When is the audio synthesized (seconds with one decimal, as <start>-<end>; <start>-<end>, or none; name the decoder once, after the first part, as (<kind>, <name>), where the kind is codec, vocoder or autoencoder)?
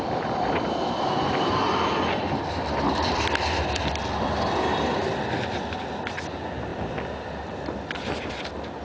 none